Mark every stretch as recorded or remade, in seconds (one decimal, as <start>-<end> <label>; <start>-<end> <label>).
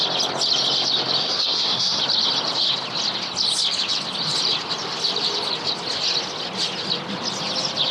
0.0-1.2 recorded; 1.2-2.0 remade; 2.0-7.9 recorded